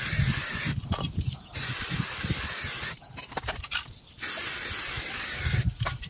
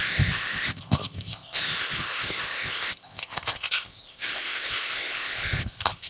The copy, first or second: second